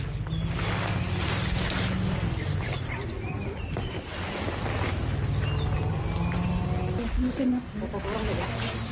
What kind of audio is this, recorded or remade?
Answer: recorded